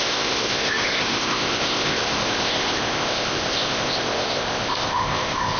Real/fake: fake